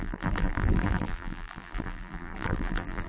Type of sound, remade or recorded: remade